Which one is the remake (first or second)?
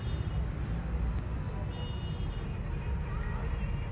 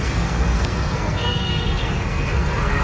second